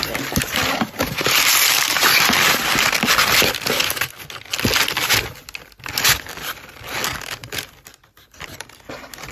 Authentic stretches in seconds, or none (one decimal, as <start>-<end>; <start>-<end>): 0.0-7.4; 8.9-9.3